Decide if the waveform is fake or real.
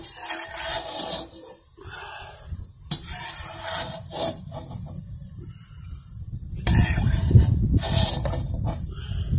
real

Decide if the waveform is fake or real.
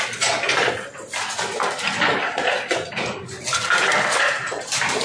real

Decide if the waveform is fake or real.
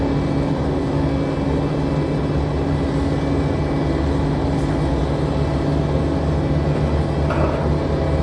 real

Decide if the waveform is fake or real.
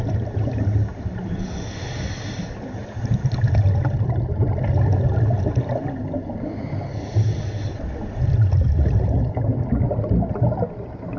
real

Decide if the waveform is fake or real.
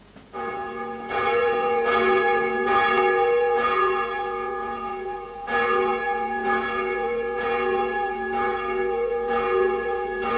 fake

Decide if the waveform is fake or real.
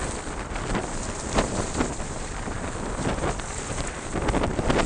real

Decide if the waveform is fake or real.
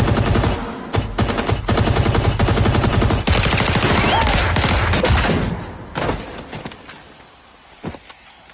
real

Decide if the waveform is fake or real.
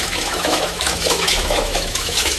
fake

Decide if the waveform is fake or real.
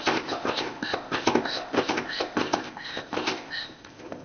fake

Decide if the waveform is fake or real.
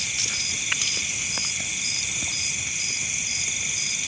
real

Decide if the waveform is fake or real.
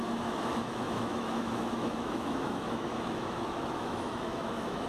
fake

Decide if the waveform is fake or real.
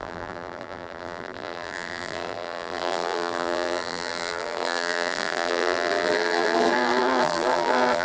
fake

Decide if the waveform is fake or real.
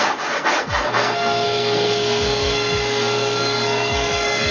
fake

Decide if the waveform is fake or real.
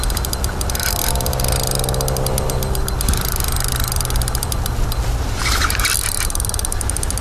real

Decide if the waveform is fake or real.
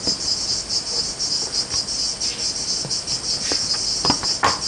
real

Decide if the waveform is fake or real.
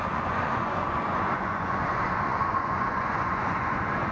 fake